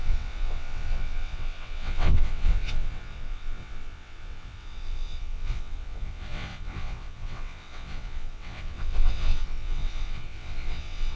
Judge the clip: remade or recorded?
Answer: remade